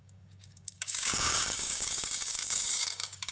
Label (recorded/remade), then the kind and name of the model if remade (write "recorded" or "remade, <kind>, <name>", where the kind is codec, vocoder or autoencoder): remade, codec, DAC